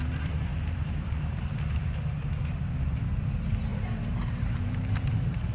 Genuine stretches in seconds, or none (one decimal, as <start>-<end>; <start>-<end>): 0.0-0.5; 2.3-3.7